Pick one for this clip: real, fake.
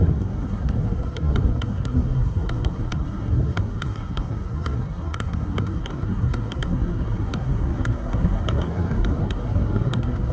fake